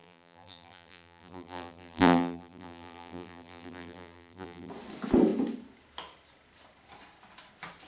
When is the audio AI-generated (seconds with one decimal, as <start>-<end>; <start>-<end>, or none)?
0.0-4.7